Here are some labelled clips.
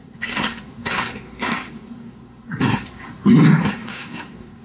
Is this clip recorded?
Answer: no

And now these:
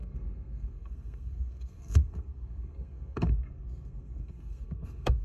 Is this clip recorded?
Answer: no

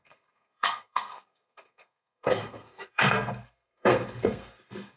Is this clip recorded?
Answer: no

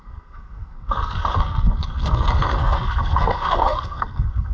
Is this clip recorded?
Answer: no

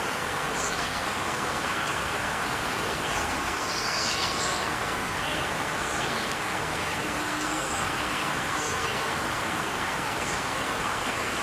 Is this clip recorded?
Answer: no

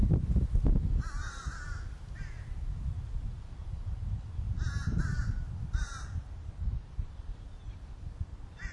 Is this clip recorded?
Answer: yes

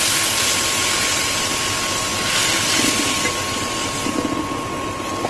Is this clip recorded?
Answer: yes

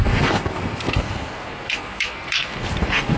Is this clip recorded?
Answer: no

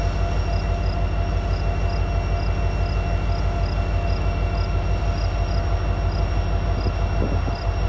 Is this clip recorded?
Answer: yes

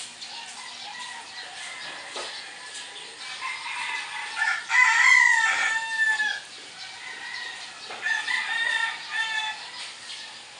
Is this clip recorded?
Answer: yes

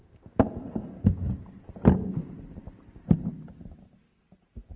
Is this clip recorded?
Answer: yes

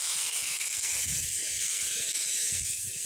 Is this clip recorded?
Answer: no